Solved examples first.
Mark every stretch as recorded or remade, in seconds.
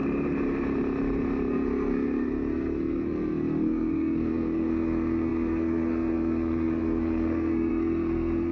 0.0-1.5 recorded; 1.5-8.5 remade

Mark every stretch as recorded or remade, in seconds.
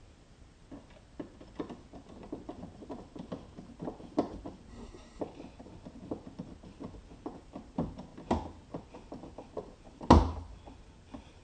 0.0-4.7 recorded; 4.7-5.2 remade; 5.2-11.4 recorded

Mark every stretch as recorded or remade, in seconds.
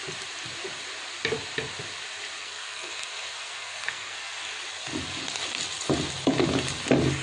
0.0-2.4 recorded; 2.4-4.5 remade; 4.5-7.2 recorded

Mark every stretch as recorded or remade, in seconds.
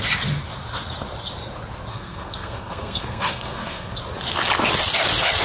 0.0-1.9 recorded; 1.9-4.0 remade; 4.0-5.4 recorded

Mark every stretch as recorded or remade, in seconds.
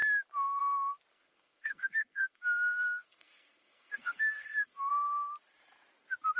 0.0-1.1 recorded; 1.1-4.9 remade; 4.9-6.4 recorded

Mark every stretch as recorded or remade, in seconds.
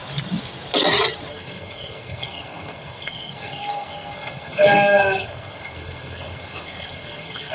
0.0-1.3 recorded; 1.3-7.5 remade